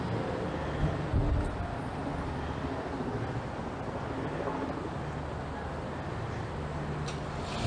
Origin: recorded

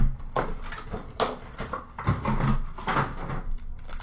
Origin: recorded